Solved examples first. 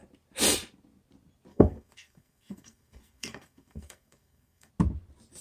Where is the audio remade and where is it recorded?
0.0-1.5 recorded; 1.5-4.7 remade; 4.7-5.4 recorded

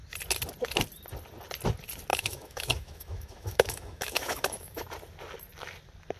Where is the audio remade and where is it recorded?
0.0-2.1 recorded; 2.1-4.8 remade; 4.8-6.2 recorded

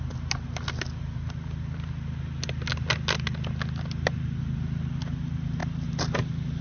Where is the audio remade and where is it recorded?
0.0-6.6 recorded